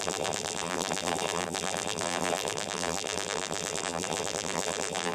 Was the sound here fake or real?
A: fake